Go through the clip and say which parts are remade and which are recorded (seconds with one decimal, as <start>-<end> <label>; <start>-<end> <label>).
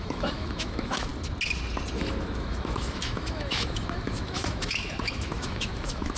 0.0-1.1 remade; 1.1-1.9 recorded; 1.9-6.2 remade